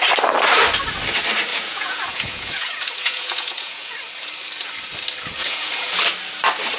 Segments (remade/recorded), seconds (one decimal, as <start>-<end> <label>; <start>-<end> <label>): 0.0-1.5 recorded; 1.5-3.9 remade; 3.9-5.4 recorded; 5.4-6.0 remade; 6.0-6.8 recorded